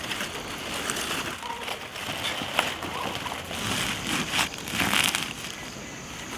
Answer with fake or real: real